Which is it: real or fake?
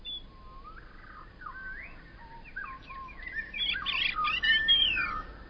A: real